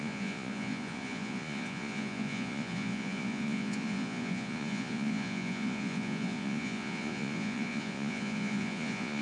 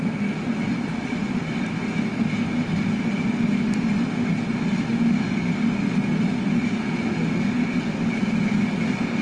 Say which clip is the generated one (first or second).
first